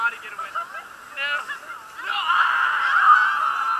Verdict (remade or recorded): recorded